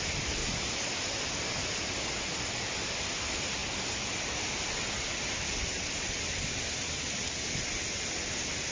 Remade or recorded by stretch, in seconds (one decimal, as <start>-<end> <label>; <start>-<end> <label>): 0.0-8.7 recorded